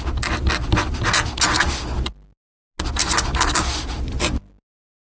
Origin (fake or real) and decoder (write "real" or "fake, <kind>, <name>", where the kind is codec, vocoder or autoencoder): real